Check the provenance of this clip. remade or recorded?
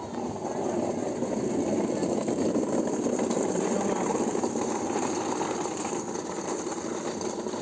recorded